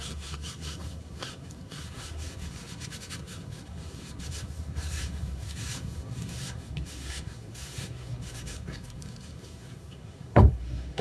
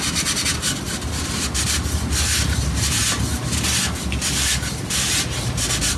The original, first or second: second